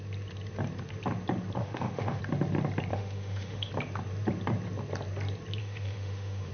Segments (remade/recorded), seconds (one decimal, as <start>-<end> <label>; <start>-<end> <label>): 0.0-1.6 recorded; 1.6-2.2 remade; 2.2-2.9 recorded; 2.9-3.7 remade; 3.7-5.6 recorded; 5.6-6.5 remade